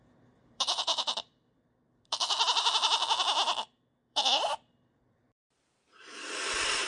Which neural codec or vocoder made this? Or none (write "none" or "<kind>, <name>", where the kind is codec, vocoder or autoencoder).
vocoder, BigVGAN v2